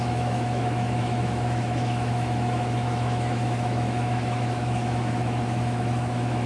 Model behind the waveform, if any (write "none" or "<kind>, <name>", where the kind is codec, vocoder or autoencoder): autoencoder, DAC-VAE